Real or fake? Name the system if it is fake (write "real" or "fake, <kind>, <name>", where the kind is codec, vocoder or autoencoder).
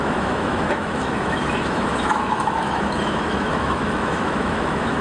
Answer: fake, autoencoder, DAC-VAE